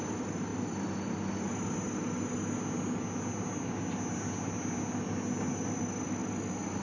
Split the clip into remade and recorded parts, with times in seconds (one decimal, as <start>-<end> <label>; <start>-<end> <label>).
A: 0.0-6.8 recorded